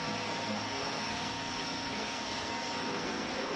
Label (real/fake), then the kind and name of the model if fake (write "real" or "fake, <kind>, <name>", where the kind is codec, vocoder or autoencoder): fake, codec, SNAC